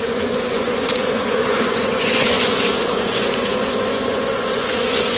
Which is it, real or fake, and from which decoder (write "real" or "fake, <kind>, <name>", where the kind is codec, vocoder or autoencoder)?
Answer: fake, vocoder, Vocos